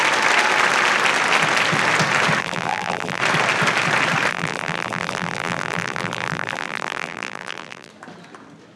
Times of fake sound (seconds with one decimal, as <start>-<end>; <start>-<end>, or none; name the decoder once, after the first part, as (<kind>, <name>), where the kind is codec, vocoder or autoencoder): 2.4-3.2 (vocoder, BigVGAN v2); 4.3-7.9